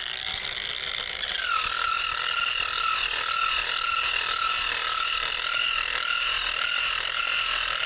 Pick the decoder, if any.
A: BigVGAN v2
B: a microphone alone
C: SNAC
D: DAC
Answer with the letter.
B